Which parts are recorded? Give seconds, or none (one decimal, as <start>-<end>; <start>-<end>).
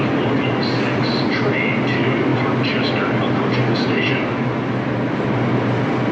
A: 0.0-6.1